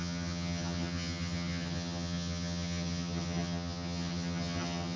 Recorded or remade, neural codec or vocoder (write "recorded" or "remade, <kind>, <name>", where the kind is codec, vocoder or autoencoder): remade, vocoder, HiFi-GAN